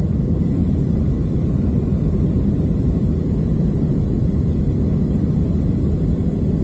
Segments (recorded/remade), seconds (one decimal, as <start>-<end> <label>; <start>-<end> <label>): 0.0-0.6 recorded; 0.6-4.6 remade; 4.6-6.6 recorded